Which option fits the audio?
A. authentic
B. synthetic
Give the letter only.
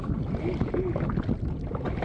A